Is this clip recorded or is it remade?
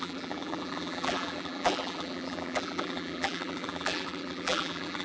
remade